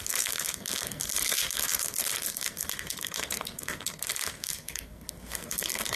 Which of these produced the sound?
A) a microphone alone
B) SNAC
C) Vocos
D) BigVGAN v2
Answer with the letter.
B